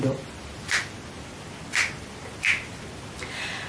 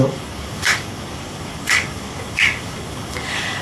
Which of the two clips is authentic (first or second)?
first